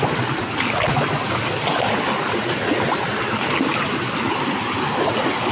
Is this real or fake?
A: real